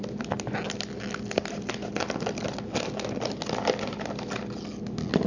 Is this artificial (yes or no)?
no